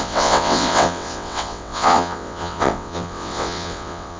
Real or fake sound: fake